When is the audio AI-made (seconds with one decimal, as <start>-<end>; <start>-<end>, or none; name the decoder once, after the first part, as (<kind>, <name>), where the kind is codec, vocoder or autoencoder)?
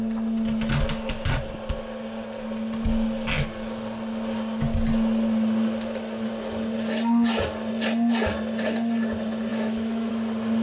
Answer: 9.5-10.1 (autoencoder, DAC-VAE)